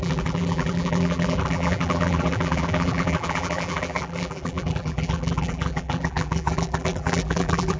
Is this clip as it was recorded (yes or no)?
no